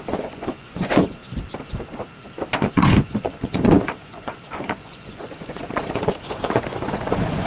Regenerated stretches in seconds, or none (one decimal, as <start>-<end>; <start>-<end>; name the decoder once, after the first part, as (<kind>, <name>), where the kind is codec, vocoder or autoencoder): 0.0-1.2 (vocoder, Vocos); 2.6-7.5